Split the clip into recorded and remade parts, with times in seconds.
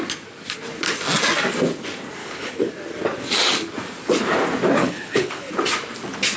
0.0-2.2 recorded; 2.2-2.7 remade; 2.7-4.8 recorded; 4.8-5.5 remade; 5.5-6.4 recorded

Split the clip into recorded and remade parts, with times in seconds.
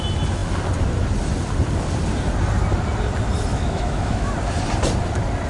0.0-3.5 recorded; 3.5-4.3 remade; 4.3-5.5 recorded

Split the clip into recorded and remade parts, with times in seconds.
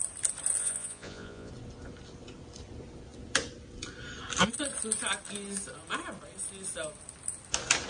0.0-0.6 recorded; 0.6-1.5 remade; 1.5-7.9 recorded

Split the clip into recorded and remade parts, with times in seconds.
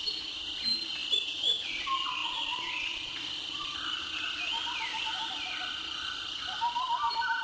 0.0-1.0 recorded; 1.0-1.8 remade; 1.8-2.2 recorded; 2.2-3.7 remade; 3.7-7.4 recorded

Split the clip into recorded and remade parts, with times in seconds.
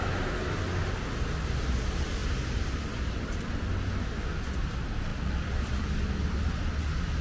0.0-7.2 recorded